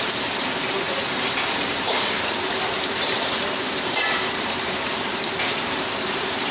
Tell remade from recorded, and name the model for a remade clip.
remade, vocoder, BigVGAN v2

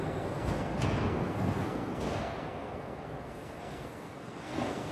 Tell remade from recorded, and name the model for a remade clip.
remade, codec, SNAC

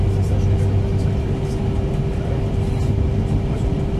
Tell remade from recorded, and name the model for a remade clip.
recorded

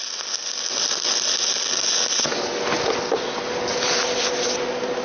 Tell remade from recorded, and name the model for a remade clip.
recorded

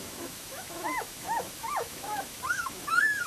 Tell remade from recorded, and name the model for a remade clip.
remade, autoencoder, DAC-VAE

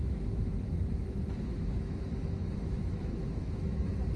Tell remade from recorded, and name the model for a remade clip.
remade, autoencoder, DAC-VAE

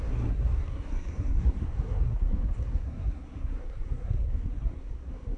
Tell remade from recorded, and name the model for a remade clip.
remade, codec, SNAC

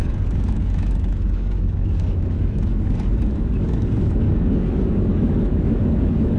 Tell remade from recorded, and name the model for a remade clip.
remade, codec, DAC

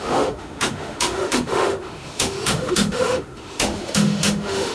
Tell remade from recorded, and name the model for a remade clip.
remade, autoencoder, DAC-VAE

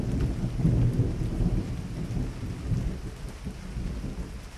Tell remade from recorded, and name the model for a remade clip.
recorded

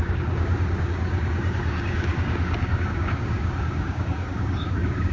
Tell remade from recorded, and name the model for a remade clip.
remade, codec, DAC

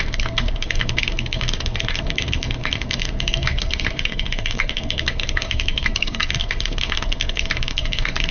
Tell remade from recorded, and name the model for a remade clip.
remade, codec, SNAC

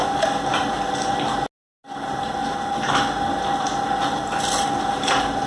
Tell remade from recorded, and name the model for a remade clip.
recorded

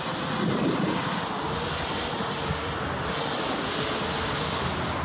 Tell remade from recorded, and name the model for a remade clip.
recorded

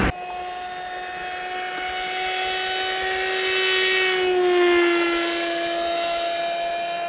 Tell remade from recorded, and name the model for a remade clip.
recorded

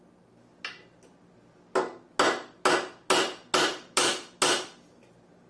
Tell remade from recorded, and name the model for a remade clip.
recorded